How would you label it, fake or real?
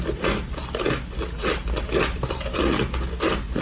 real